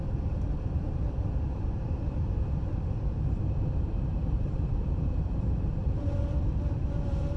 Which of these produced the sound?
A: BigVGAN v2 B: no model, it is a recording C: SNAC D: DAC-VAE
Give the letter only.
A